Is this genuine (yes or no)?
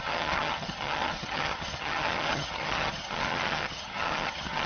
no